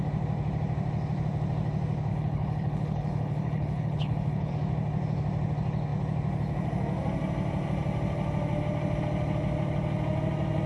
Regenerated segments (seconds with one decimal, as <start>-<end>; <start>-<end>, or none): 2.1-4.5